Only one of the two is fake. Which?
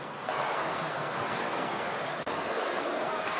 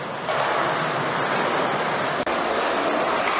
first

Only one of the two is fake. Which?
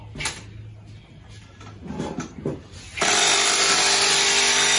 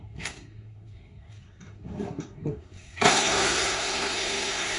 second